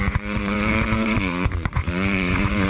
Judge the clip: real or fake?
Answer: fake